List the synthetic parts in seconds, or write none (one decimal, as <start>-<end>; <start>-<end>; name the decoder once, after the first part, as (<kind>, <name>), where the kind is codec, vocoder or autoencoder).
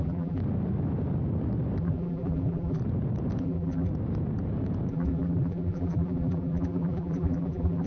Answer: 0.0-0.4 (vocoder, BigVGAN v2); 1.8-2.8; 3.4-3.9; 4.9-7.9